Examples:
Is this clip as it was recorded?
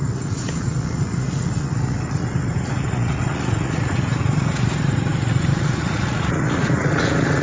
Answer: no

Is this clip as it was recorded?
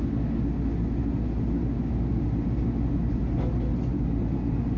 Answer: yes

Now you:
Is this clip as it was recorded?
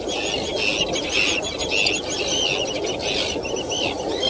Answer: yes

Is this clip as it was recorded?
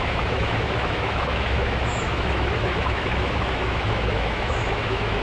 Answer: no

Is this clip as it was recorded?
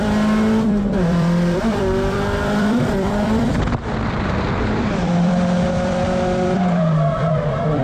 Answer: no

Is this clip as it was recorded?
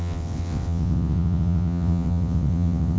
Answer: no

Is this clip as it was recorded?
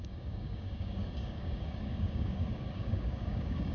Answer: no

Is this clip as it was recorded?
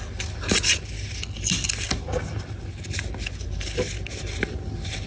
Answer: yes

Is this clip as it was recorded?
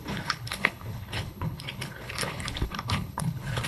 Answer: no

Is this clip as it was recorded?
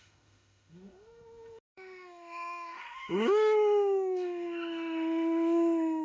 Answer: no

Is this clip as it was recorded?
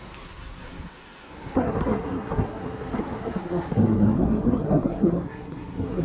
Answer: no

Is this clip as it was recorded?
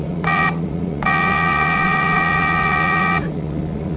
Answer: no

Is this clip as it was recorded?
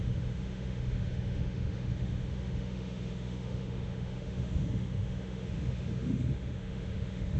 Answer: no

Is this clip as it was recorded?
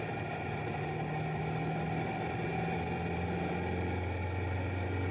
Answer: yes